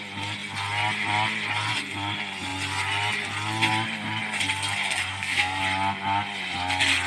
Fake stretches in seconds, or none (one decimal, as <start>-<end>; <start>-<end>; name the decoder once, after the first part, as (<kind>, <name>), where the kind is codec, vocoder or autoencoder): 5.1-5.6 (codec, SNAC)

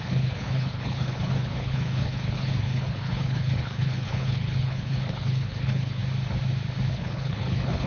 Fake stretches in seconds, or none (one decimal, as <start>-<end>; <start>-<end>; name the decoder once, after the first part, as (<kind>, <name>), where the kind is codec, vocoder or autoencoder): 0.0-6.0 (codec, HILCodec); 6.9-7.9

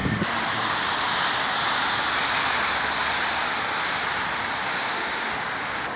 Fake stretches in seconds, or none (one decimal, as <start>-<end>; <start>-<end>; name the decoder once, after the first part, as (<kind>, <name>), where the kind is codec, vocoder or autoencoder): 4.7-5.3 (autoencoder, DAC-VAE)

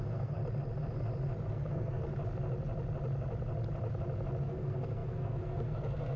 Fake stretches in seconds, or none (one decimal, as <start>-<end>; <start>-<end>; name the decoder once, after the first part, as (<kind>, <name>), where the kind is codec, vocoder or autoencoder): 0.0-0.4 (codec, SNAC); 1.5-2.1; 4.4-6.2

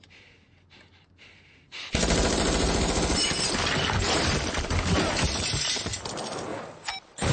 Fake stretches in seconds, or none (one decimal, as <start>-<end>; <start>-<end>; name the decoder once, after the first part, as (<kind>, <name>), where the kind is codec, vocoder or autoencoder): none

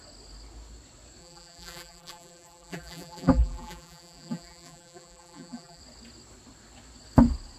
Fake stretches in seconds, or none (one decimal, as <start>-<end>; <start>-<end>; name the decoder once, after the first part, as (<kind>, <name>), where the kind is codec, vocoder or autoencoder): 1.2-5.8 (vocoder, BigVGAN v2)

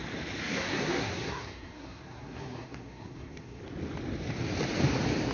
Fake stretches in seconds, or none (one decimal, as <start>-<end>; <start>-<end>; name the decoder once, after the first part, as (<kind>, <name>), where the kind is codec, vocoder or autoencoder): 0.4-3.6 (codec, SNAC)

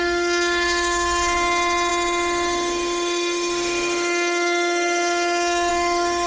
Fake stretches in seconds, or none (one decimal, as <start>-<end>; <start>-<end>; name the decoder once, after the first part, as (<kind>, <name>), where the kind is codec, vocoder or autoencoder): 0.0-6.3 (autoencoder, DAC-VAE)